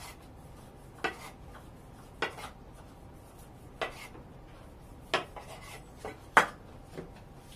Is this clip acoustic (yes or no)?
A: yes